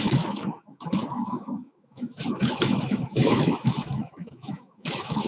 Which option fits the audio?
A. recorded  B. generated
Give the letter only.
B